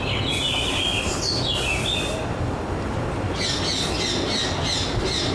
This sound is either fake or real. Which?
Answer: real